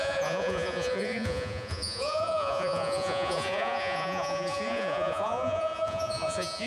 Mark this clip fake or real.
fake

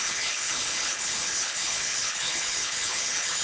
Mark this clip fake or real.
fake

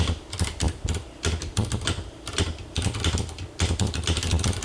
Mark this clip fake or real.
fake